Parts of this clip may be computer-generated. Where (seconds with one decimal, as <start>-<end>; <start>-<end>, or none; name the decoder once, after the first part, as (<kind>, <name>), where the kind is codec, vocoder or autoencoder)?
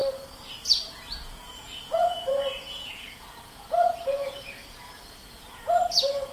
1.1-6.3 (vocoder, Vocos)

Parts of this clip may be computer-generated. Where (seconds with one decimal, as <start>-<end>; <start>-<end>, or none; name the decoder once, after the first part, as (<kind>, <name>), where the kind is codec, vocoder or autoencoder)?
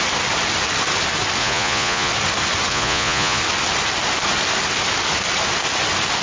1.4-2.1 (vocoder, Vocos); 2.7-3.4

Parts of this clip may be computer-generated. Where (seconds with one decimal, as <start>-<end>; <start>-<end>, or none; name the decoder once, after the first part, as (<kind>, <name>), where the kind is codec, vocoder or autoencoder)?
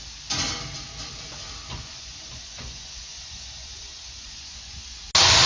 1.7-5.0 (vocoder, Vocos)